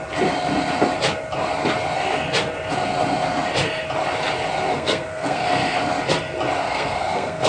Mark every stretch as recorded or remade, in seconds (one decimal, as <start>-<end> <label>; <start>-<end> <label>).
0.0-4.7 recorded; 4.7-5.5 remade; 5.5-6.6 recorded; 6.6-7.5 remade

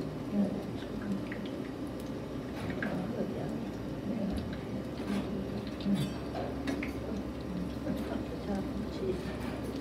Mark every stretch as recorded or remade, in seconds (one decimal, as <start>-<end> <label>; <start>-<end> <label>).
0.0-0.4 recorded; 0.4-1.1 remade; 1.1-1.5 recorded; 1.5-2.6 remade; 2.6-9.8 recorded

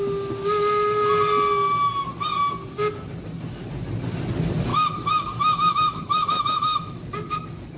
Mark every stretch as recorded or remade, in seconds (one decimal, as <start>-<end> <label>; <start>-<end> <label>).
0.0-4.7 recorded; 4.7-7.0 remade; 7.0-7.8 recorded

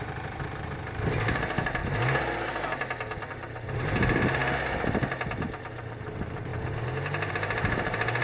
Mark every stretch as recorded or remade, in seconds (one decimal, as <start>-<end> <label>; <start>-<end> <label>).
0.0-1.8 remade; 1.8-3.3 recorded; 3.3-4.4 remade; 4.4-5.6 recorded; 5.6-6.5 remade; 6.5-7.3 recorded; 7.3-8.2 remade

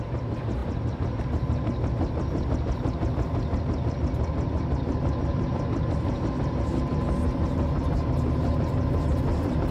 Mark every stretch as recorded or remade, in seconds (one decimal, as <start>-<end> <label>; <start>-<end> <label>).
0.0-9.7 recorded

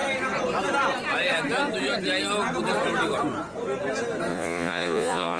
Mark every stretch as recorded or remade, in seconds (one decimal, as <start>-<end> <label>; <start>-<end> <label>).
0.0-4.3 recorded; 4.3-5.4 remade